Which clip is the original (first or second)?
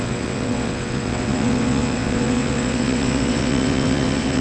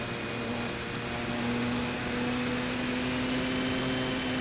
second